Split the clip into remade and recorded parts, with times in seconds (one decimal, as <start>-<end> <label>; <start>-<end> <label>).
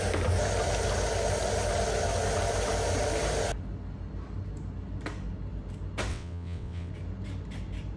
0.0-6.1 recorded; 6.1-6.9 remade; 6.9-8.0 recorded